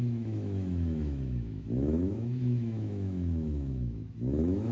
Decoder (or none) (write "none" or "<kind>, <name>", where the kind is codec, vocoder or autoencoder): autoencoder, DAC-VAE